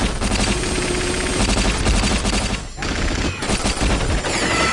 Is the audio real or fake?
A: real